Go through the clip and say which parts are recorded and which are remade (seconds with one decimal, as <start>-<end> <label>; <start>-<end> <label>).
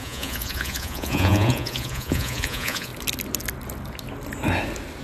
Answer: 0.0-2.9 remade; 2.9-5.0 recorded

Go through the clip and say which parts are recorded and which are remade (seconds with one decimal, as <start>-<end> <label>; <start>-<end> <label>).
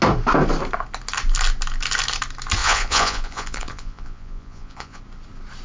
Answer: 0.0-2.6 recorded; 2.6-5.0 remade; 5.0-5.6 recorded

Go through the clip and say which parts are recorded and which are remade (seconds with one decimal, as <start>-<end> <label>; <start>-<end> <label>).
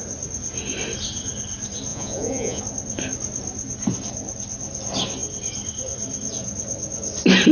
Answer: 0.0-1.9 recorded; 1.9-2.6 remade; 2.6-7.5 recorded